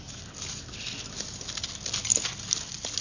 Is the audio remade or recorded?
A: recorded